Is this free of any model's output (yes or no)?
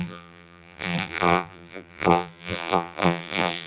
no